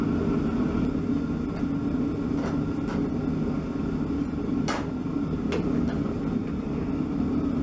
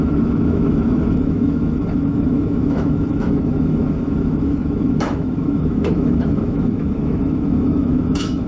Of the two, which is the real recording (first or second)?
first